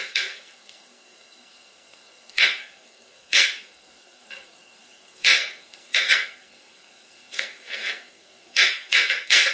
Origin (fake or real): fake